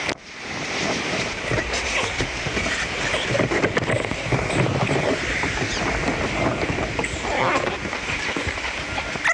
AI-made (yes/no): no